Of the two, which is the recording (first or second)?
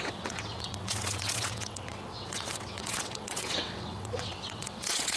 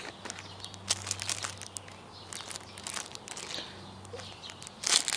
second